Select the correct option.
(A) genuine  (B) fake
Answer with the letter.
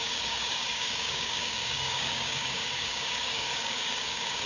B